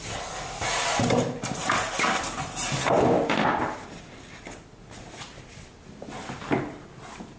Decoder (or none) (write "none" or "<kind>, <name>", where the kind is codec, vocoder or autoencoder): none